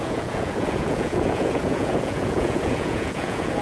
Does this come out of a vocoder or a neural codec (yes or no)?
yes